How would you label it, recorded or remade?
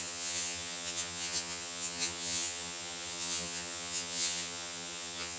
remade